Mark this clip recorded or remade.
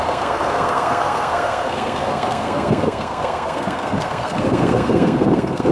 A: remade